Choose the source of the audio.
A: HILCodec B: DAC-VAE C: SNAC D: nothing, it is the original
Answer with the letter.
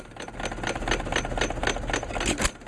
D